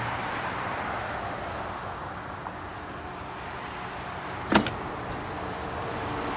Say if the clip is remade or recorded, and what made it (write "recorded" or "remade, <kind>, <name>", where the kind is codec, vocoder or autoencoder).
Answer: recorded